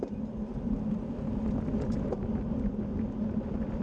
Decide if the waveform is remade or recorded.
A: recorded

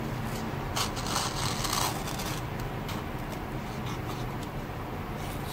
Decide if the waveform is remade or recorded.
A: recorded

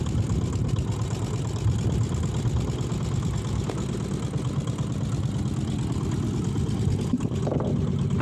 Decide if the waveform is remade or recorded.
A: recorded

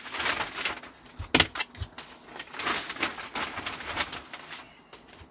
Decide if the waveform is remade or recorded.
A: recorded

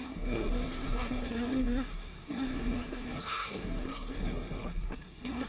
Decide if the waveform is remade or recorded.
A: remade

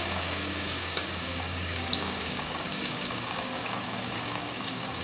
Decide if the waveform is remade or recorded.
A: remade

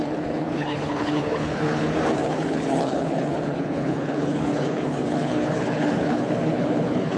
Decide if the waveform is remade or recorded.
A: remade